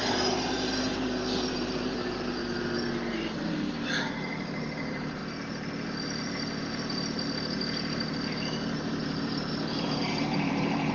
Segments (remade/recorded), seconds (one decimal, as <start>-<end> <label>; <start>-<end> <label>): 0.0-2.4 remade; 2.4-3.1 recorded; 3.1-5.2 remade; 5.2-9.5 recorded; 9.5-10.9 remade